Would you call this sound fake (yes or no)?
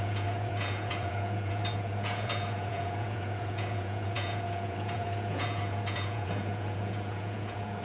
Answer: yes